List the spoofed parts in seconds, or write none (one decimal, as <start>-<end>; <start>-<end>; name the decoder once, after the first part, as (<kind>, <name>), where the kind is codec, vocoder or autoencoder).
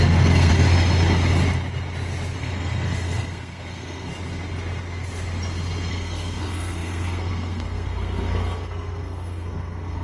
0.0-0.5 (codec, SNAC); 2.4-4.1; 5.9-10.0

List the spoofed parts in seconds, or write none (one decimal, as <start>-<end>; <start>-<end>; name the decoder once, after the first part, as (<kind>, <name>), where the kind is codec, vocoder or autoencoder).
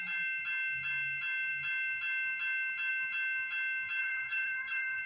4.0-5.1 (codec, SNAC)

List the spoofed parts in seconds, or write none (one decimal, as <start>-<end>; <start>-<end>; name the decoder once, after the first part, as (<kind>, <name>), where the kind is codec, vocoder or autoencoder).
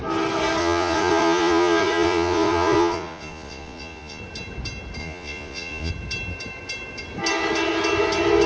0.6-4.2 (vocoder, Vocos); 5.0-5.9